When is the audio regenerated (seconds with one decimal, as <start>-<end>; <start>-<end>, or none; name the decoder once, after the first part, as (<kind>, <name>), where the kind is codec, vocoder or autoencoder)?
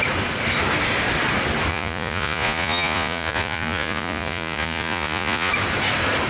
1.7-5.5 (vocoder, Vocos)